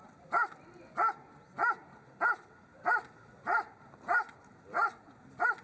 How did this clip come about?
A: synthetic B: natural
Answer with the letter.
B